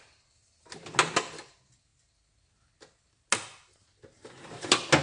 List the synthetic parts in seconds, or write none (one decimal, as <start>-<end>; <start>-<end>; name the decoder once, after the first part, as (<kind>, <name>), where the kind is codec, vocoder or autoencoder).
none